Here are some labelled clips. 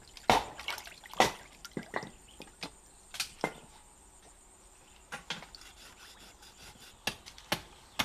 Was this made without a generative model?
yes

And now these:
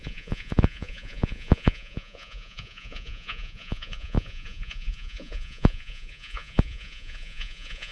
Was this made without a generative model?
no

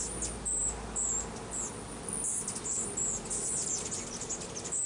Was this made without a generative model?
yes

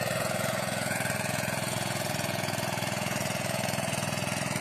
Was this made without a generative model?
no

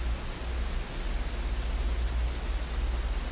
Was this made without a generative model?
yes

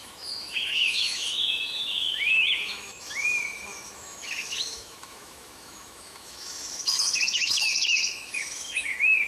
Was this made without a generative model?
no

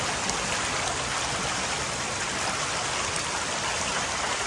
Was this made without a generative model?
yes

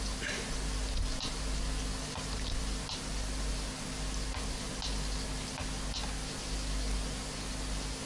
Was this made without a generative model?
yes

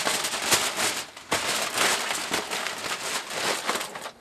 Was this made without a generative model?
yes